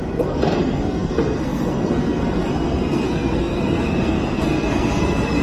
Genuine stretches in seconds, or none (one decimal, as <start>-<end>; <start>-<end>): none